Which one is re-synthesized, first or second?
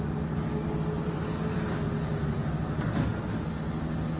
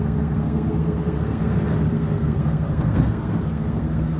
second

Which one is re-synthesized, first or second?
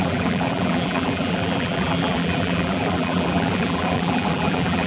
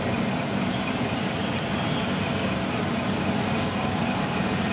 first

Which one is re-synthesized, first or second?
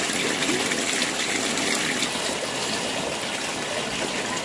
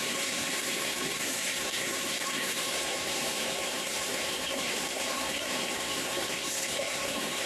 second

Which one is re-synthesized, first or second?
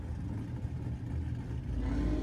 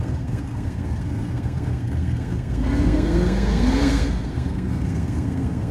second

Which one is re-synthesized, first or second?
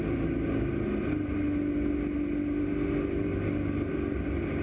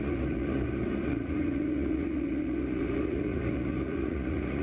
second